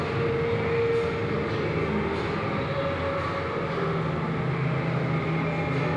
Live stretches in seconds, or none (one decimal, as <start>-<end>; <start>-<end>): 0.0-6.0